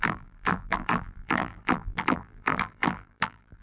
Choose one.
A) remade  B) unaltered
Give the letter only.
A